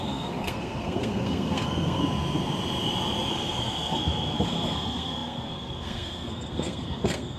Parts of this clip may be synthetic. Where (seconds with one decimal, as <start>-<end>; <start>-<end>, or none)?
0.0-2.0; 3.3-7.4